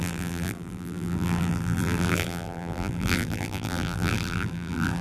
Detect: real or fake fake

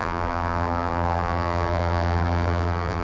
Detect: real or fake fake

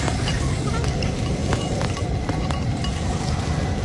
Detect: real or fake fake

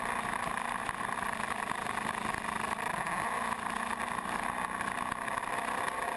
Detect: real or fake real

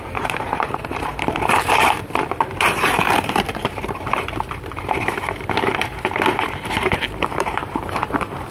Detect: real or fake fake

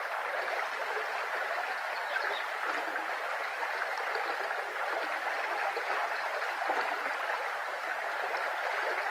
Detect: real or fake real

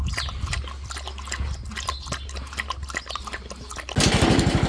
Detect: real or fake real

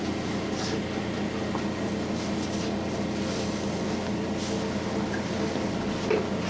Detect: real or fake real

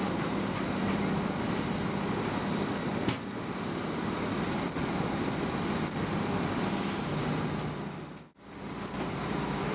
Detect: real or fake fake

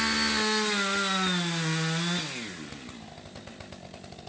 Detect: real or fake real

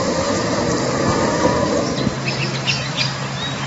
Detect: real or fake real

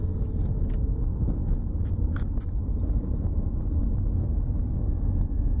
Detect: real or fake real